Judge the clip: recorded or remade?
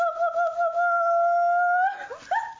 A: recorded